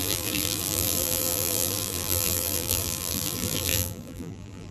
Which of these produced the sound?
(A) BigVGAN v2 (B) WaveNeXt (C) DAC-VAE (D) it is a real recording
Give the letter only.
A